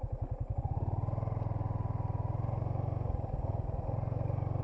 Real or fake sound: real